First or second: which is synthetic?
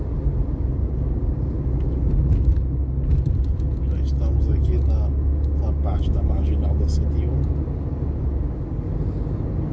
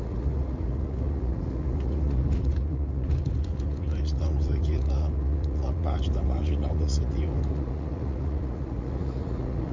second